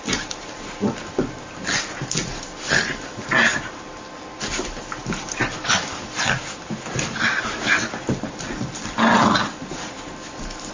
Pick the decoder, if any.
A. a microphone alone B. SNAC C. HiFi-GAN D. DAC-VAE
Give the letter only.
A